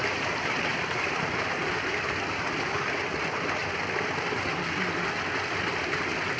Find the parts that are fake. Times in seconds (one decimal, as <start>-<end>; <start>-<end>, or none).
none